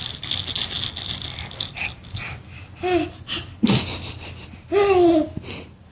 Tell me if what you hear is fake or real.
real